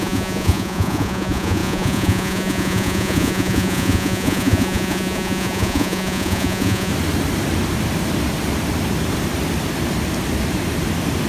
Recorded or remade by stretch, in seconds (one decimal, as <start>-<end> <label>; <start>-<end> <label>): 0.0-6.9 remade; 6.9-11.3 recorded